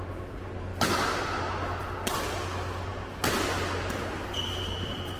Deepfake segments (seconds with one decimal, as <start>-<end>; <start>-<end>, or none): none